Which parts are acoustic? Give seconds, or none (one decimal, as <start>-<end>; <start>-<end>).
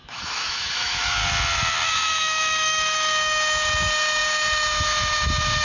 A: 1.2-1.9